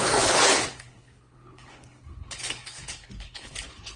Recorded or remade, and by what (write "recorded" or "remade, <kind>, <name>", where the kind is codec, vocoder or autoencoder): remade, codec, HILCodec